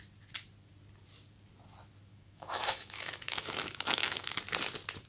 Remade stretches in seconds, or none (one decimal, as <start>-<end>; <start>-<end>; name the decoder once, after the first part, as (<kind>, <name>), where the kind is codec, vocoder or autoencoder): 2.1-4.4 (autoencoder, DAC-VAE)